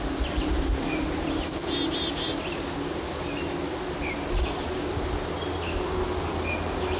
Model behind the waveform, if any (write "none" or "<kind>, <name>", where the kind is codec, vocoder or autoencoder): none